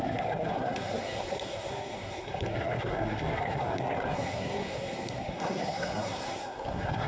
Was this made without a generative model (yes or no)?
no